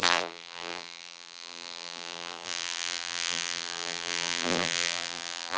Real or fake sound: fake